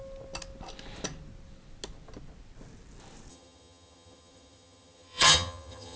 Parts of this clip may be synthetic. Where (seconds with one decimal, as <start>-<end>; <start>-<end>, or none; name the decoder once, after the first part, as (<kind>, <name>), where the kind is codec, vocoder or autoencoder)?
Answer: 3.3-6.0 (vocoder, HiFi-GAN)